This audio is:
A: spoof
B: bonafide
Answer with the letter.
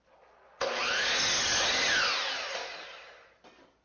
B